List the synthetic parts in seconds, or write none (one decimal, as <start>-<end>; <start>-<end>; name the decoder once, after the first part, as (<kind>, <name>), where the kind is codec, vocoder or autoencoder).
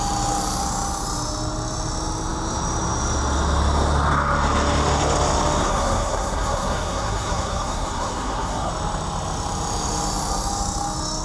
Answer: 5.6-8.7 (codec, SNAC)